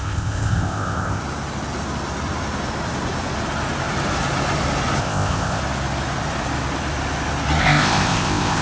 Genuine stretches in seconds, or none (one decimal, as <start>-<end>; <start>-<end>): 1.2-5.0; 5.6-7.6